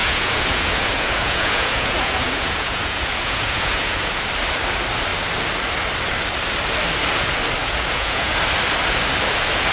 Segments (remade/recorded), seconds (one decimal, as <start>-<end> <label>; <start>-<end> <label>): 0.0-4.2 remade; 4.2-7.6 recorded; 7.6-8.3 remade; 8.3-9.7 recorded